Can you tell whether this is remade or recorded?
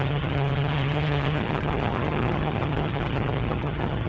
remade